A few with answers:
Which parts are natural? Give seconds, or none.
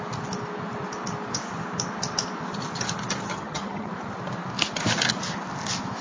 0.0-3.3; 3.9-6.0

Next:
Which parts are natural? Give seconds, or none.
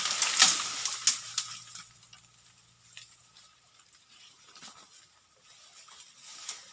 0.0-6.7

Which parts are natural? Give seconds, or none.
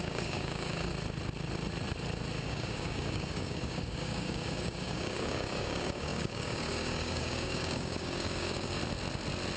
0.9-2.4; 8.8-9.6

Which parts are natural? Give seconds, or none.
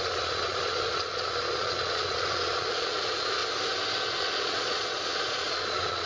3.4-4.1